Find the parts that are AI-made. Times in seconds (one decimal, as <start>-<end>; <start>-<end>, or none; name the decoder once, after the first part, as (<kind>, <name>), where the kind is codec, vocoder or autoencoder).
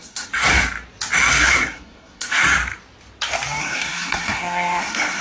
0.0-0.5 (codec, SNAC); 1.3-2.4; 3.6-5.2